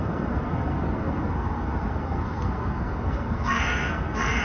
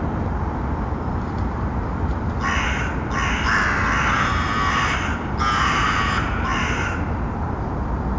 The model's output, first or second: first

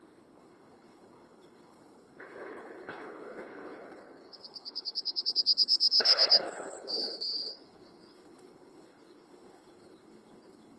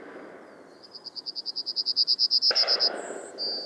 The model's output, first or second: first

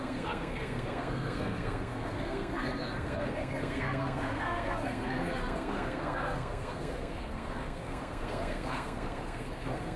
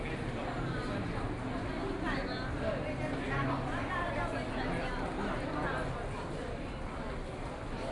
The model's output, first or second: first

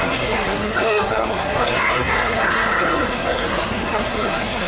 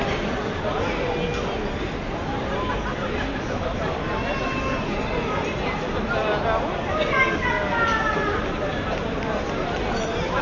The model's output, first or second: first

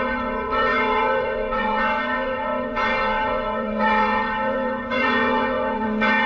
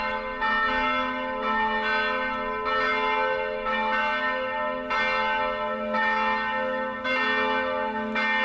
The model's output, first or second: first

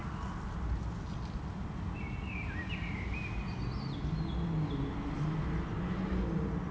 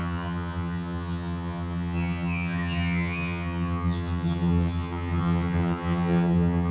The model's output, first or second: second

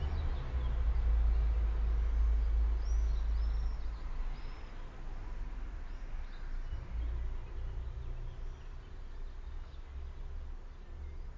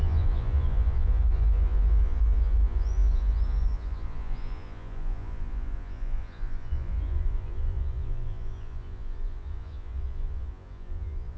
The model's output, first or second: second